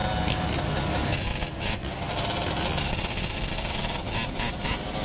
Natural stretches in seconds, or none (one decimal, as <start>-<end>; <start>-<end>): 0.0-5.0